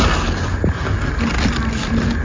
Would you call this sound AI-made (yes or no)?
no